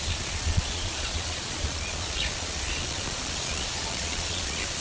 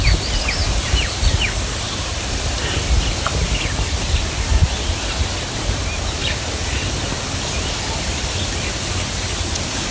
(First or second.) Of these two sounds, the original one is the second